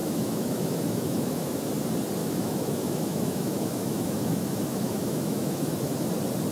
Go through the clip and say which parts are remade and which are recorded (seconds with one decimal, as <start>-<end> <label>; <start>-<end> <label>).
0.0-1.6 remade; 1.6-2.2 recorded; 2.2-6.1 remade; 6.1-6.5 recorded